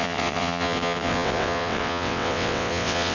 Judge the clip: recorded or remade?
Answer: remade